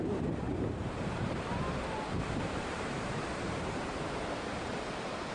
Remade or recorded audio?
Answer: remade